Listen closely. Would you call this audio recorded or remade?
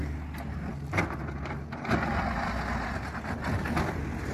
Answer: recorded